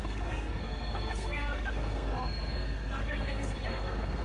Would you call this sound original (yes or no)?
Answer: no